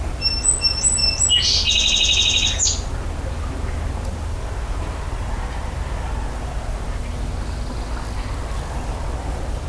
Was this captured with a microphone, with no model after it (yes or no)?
yes